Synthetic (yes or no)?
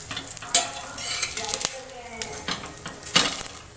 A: no